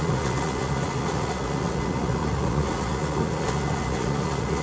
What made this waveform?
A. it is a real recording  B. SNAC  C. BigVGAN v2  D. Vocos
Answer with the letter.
D